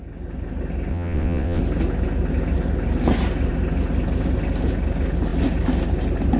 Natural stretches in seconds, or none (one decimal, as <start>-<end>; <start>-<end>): 0.0-0.9; 1.6-6.4